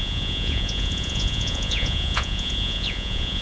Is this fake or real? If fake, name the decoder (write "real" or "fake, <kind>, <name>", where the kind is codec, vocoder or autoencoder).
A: fake, vocoder, Vocos